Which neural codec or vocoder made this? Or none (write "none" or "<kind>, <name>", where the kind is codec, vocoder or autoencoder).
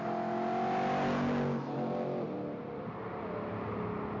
none